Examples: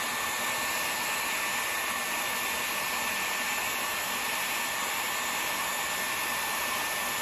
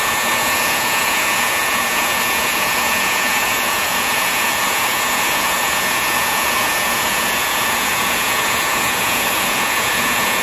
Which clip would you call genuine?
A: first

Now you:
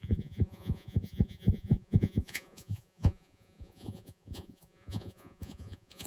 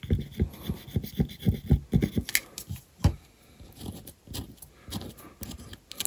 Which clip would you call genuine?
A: second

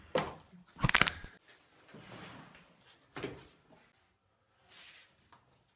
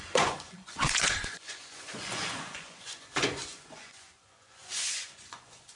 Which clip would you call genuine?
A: first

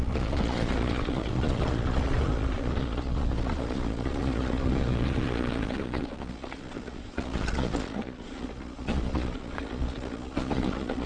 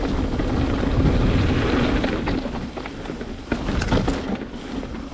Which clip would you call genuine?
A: second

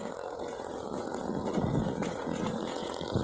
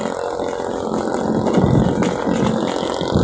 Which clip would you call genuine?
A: second